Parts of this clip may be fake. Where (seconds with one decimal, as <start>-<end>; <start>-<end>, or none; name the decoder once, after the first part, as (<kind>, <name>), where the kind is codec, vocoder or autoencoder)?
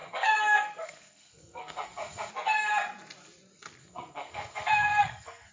0.0-2.3 (codec, SNAC); 3.8-5.5